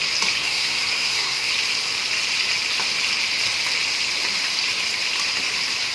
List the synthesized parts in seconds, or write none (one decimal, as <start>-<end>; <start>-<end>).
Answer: 0.4-1.5